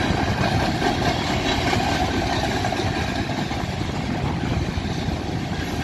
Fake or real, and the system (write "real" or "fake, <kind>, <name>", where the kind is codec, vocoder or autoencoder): real